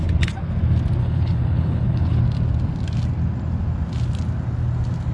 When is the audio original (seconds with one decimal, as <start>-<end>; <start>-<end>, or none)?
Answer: 0.0-1.0; 2.2-5.1